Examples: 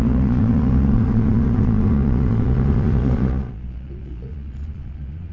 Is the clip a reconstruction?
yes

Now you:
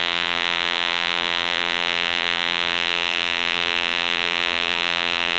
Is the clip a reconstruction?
yes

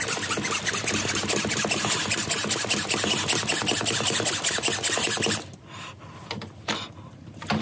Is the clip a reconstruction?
no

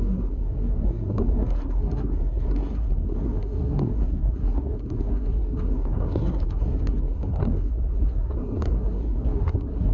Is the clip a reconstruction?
yes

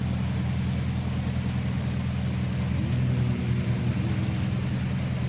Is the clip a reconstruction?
no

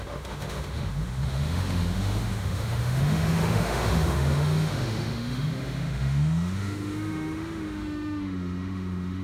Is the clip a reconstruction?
yes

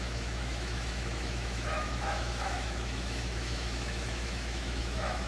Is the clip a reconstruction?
yes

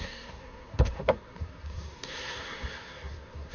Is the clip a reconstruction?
yes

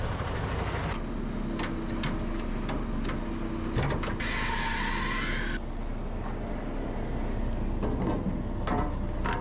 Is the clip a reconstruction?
no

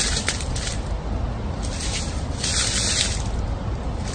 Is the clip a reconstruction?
no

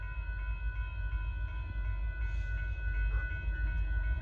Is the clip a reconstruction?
no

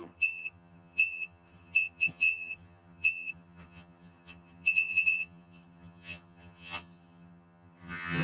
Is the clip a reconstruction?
yes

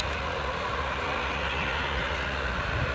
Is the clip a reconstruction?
yes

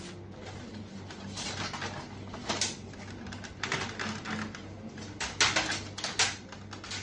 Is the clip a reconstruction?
no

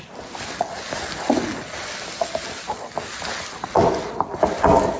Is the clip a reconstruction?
no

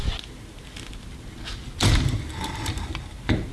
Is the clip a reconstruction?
no